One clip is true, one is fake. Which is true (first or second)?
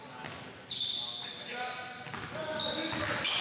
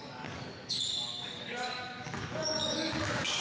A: first